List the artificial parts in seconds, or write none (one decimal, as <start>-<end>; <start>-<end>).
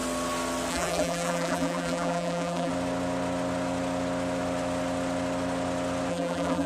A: 0.7-2.7; 6.1-6.7